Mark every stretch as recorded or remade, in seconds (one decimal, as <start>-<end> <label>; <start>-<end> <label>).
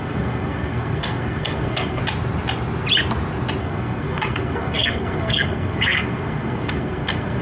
0.0-2.0 remade; 2.0-3.6 recorded; 3.6-7.4 remade